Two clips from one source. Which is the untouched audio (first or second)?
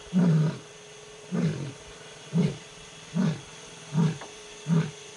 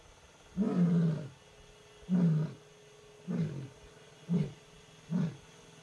second